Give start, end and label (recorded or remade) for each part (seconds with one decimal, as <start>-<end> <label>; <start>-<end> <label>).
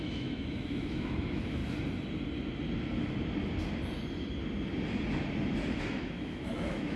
0.0-1.6 remade; 1.6-5.8 recorded; 5.8-7.0 remade